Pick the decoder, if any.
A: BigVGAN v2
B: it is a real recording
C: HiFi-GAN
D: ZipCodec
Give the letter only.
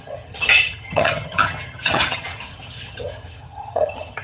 C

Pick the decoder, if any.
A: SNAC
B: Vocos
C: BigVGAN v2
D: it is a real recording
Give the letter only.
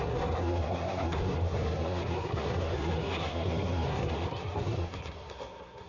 A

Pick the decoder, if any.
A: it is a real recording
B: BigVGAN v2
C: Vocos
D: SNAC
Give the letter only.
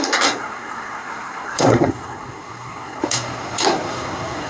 D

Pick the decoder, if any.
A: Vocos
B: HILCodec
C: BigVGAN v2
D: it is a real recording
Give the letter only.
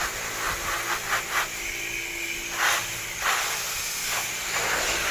D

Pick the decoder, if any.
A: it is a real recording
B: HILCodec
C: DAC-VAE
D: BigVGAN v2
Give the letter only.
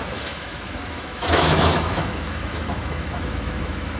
C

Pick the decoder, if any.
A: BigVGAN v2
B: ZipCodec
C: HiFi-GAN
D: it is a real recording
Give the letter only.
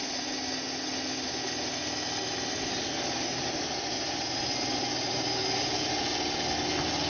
D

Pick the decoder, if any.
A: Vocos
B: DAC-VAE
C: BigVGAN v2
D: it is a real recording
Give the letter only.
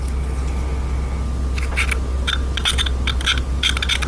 D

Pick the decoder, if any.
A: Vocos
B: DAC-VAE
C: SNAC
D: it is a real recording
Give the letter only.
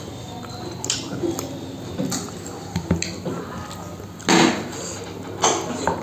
D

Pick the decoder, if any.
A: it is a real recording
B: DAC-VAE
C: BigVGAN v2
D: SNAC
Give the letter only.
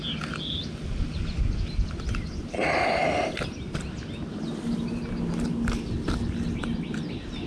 A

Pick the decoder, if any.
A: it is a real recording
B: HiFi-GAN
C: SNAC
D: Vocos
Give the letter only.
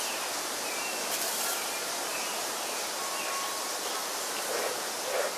A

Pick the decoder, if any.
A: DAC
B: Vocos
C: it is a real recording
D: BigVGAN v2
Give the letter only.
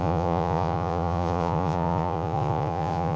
B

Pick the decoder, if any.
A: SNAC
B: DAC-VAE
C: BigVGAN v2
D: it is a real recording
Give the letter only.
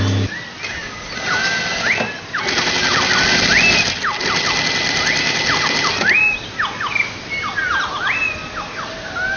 D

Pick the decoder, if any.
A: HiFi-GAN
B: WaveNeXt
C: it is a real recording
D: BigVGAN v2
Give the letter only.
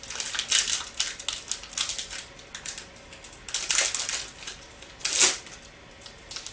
C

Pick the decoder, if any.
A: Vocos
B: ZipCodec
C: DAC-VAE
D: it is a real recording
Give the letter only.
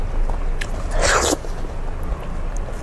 D